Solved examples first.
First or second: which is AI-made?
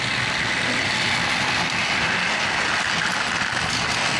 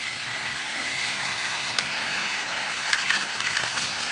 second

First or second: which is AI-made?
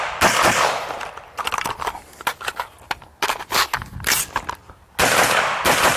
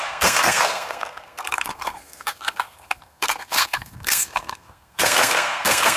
second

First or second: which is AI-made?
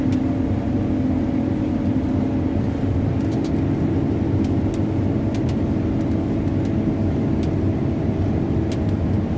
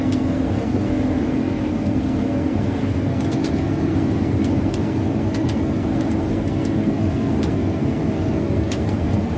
second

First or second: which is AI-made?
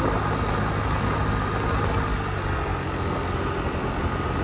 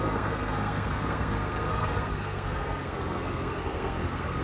second